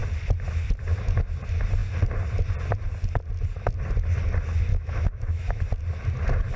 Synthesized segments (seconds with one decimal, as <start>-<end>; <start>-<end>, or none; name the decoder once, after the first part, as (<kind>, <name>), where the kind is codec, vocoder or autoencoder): 4.7-5.6 (autoencoder, DAC-VAE)